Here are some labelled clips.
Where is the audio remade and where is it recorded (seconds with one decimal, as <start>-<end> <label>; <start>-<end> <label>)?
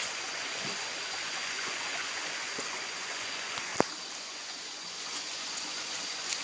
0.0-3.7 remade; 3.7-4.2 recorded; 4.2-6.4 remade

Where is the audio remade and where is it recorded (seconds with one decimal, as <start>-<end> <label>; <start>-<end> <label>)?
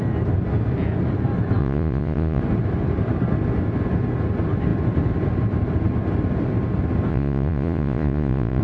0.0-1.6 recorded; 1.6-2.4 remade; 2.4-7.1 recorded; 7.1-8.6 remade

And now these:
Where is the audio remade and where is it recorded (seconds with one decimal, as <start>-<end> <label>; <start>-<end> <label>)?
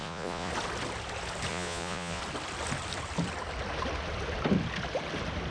0.0-0.5 remade; 0.5-1.5 recorded; 1.5-2.2 remade; 2.2-5.5 recorded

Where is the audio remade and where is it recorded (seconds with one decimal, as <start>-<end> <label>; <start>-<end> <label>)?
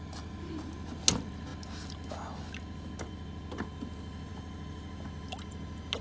0.0-6.0 recorded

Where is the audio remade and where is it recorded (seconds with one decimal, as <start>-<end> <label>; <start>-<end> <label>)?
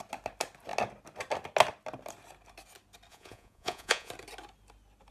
0.0-3.1 recorded; 3.1-4.1 remade; 4.1-5.1 recorded